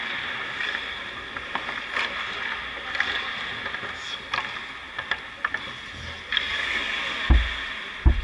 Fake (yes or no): no